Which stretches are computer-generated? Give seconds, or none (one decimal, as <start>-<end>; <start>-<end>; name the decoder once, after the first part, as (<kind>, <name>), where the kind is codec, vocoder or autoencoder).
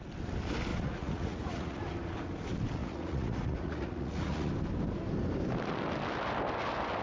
0.7-1.8 (vocoder, Vocos); 2.8-4.5